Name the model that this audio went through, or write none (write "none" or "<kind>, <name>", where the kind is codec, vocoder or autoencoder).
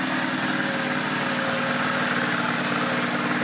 none